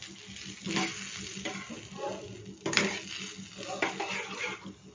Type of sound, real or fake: real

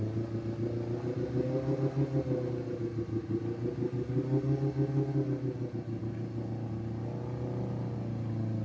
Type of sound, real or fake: real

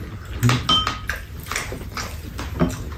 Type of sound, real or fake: real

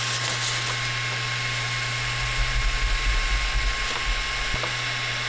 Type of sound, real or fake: real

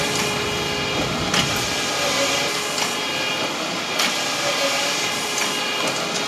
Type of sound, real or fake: real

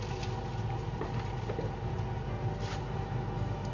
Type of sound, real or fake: real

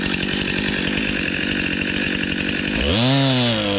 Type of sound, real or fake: real